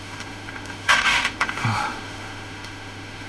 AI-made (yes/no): yes